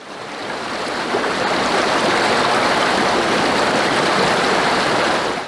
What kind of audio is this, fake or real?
real